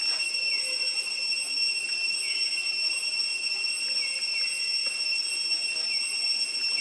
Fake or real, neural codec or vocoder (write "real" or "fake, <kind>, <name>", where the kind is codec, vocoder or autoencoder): real